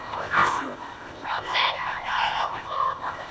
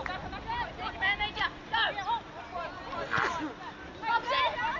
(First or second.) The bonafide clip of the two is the second